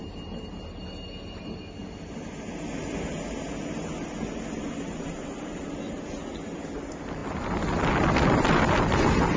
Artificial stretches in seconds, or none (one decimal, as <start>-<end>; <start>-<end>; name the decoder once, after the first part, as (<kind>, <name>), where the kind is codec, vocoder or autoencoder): none